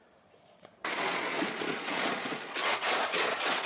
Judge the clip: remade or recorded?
remade